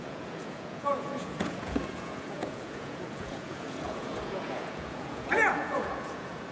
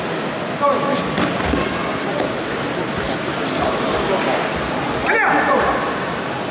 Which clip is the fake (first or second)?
first